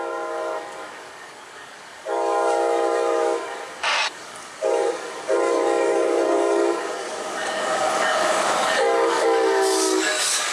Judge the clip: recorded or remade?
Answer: remade